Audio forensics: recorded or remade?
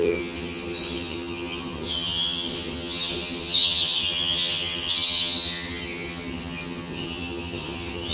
remade